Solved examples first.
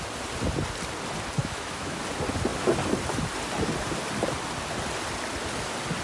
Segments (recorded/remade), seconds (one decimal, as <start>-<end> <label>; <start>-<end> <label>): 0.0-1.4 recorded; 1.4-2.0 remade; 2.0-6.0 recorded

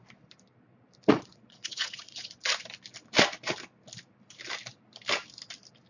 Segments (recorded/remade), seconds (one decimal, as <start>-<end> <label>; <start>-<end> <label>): 0.0-1.1 recorded; 1.1-2.4 remade; 2.4-5.9 recorded

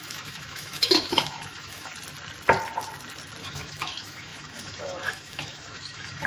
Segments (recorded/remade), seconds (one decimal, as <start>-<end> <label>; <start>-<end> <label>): 0.0-1.9 remade; 1.9-3.4 recorded; 3.4-6.3 remade

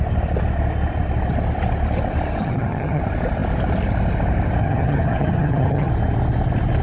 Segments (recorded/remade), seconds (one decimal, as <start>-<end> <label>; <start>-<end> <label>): 0.0-2.4 recorded; 2.4-3.0 remade; 3.0-4.6 recorded; 4.6-5.9 remade; 5.9-6.8 recorded

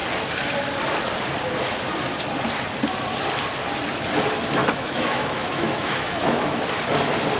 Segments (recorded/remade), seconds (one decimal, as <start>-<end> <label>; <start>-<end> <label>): 0.0-4.6 recorded; 4.6-6.8 remade; 6.8-7.4 recorded

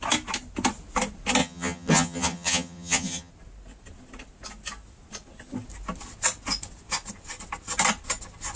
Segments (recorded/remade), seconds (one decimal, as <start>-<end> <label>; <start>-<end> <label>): 0.0-1.4 recorded; 1.4-3.3 remade; 3.3-8.6 recorded

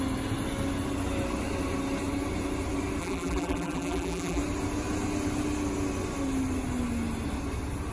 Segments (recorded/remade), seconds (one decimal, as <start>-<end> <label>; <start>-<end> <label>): 0.0-3.0 recorded; 3.0-4.4 remade; 4.4-7.9 recorded

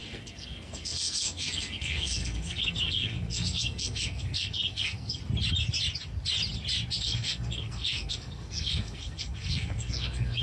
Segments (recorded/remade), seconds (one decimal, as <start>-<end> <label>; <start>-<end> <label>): 0.0-5.2 remade; 5.2-7.0 recorded; 7.0-10.4 remade